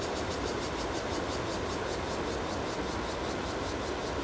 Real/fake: real